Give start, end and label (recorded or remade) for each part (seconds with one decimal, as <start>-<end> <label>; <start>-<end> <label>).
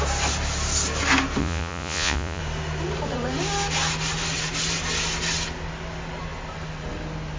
0.0-1.4 recorded; 1.4-2.4 remade; 2.4-7.4 recorded